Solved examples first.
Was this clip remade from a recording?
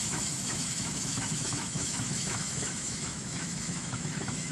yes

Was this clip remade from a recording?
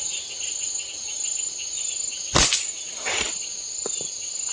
no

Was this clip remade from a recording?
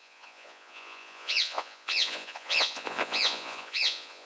yes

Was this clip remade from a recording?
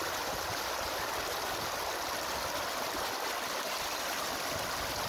no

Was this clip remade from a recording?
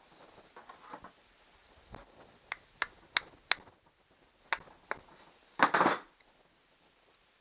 no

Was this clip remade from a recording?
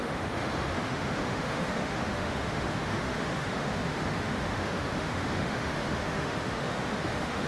yes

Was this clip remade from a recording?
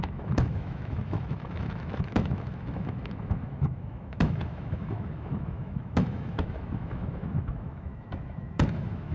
yes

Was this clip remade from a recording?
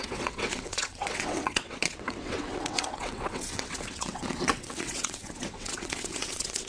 yes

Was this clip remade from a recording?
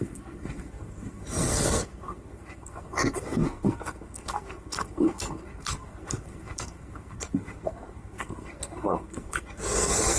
yes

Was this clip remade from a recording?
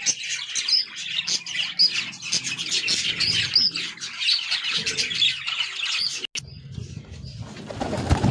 no